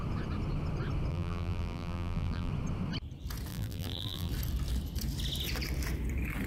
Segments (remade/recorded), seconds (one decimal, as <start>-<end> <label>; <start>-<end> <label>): 0.0-1.1 recorded; 1.1-2.5 remade; 2.5-3.5 recorded; 3.5-4.3 remade; 4.3-6.5 recorded